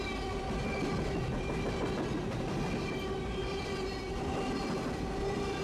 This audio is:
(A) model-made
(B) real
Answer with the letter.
B